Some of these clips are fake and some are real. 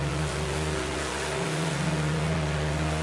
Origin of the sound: fake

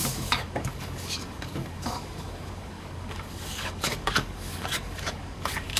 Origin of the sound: fake